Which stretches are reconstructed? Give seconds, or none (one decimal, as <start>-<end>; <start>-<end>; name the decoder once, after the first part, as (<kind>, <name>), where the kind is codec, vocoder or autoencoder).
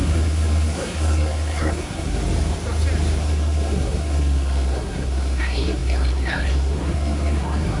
0.0-2.2 (codec, SNAC); 3.2-7.8